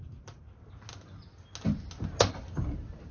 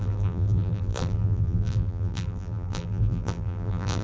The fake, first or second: second